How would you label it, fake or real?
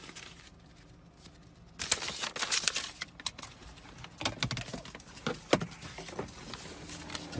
real